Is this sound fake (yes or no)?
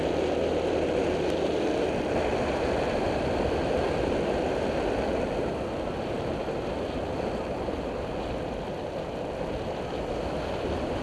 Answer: no